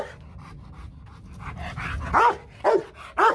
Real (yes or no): yes